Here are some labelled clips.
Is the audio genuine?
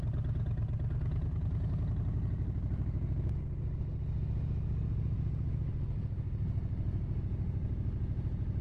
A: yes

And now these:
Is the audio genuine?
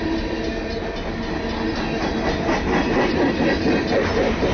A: yes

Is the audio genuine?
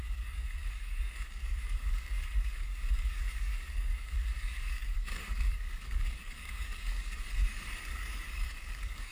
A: no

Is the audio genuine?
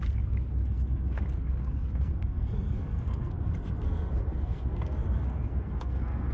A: no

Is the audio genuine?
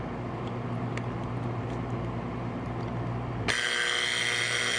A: yes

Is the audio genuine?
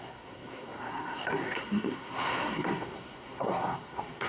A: no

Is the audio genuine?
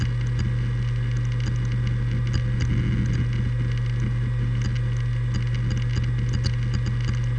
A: yes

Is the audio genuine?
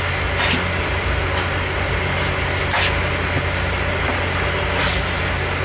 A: yes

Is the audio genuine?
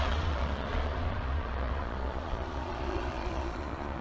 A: no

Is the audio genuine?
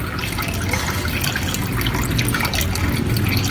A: yes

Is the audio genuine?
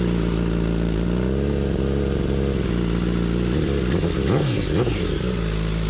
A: yes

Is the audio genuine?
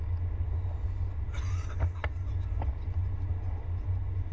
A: yes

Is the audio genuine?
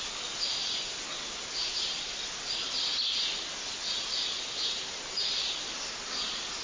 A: yes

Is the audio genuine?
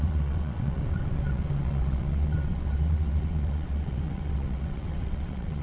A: no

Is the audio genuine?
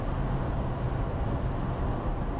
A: yes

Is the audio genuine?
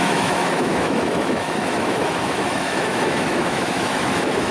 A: no